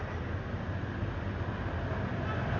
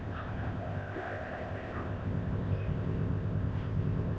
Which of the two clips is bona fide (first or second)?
first